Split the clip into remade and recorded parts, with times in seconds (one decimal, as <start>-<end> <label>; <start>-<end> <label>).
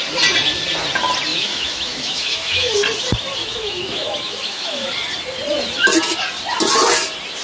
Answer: 0.0-1.3 recorded; 1.3-2.7 remade; 2.7-3.4 recorded; 3.4-4.9 remade; 4.9-7.4 recorded